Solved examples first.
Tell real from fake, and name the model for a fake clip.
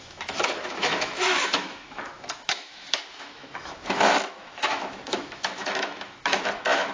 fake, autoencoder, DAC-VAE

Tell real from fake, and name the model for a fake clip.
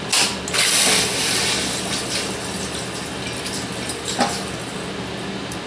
real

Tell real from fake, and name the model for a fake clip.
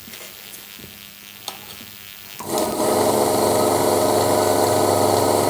real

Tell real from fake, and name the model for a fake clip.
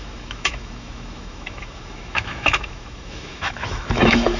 fake, autoencoder, DAC-VAE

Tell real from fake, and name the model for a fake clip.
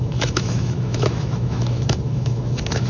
fake, autoencoder, DAC-VAE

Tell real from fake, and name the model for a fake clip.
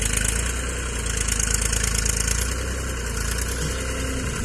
real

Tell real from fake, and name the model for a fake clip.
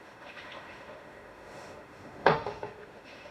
fake, autoencoder, DAC-VAE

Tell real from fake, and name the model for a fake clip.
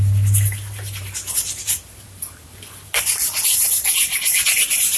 real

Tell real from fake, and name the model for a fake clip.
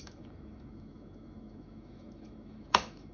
fake, autoencoder, DAC-VAE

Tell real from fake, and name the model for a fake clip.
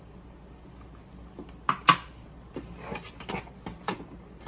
real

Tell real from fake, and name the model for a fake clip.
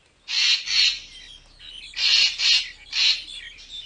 real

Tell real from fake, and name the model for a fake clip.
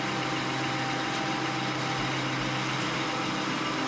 real